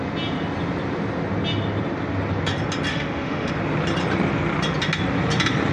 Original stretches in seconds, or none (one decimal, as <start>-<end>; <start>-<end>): 0.0-2.9; 3.5-5.7